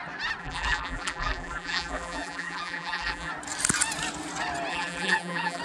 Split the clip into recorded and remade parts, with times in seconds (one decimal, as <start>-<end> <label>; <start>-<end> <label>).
0.0-0.4 recorded; 0.4-3.3 remade; 3.3-4.7 recorded; 4.7-5.6 remade